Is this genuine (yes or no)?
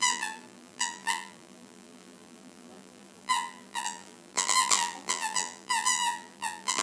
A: no